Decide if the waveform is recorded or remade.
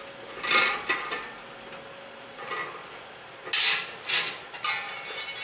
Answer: recorded